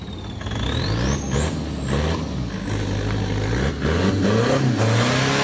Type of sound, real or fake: real